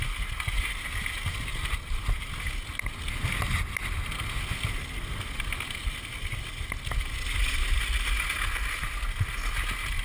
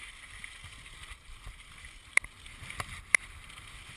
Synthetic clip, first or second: second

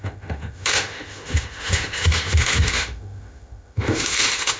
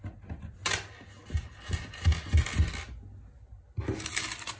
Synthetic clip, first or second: first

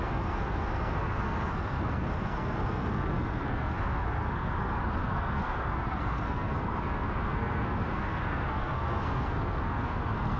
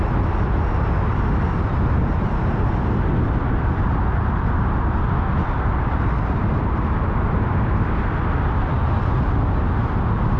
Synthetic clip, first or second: first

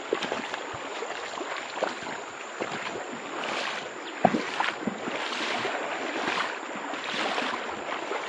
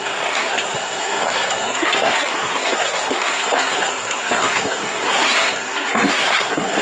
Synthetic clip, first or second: second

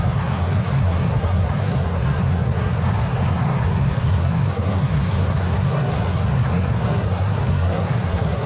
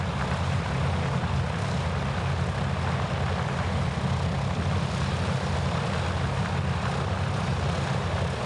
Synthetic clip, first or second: first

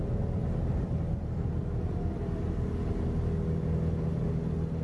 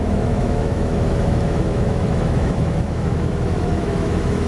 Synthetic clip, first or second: second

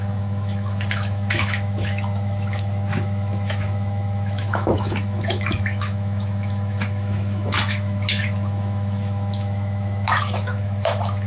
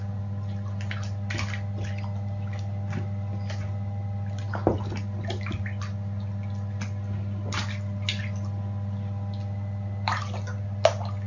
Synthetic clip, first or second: first